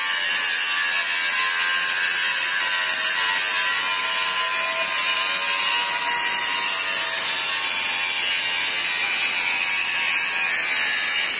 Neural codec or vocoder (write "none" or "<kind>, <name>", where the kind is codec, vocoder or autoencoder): none